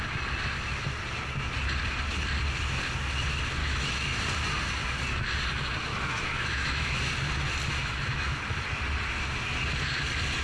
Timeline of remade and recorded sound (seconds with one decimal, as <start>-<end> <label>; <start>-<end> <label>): 0.0-3.6 recorded; 3.6-4.2 remade; 4.2-5.9 recorded; 5.9-7.1 remade; 7.1-7.8 recorded; 7.8-8.4 remade; 8.4-10.4 recorded